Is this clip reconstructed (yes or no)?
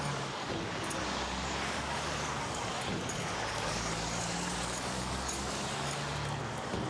yes